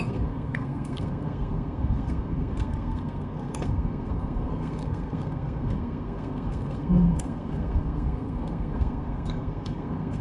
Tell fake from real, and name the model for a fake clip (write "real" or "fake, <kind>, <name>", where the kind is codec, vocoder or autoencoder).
fake, codec, SNAC